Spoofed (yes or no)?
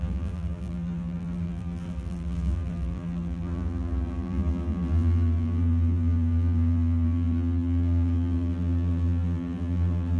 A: yes